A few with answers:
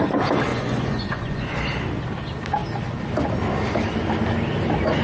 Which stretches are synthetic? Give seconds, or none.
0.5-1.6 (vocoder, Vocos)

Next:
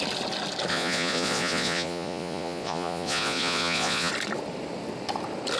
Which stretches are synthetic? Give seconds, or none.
0.7-4.1 (vocoder, Vocos)

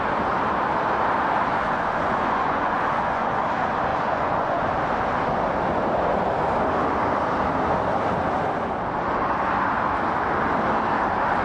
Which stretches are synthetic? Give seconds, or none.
1.5-3.4 (vocoder, Vocos); 3.9-4.7

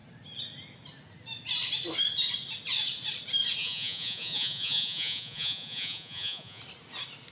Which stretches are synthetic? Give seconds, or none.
3.6-6.6 (vocoder, Vocos)